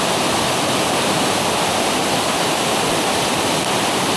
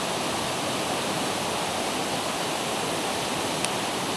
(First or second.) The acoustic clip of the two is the second